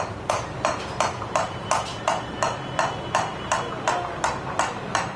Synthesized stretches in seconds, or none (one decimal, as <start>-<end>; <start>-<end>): none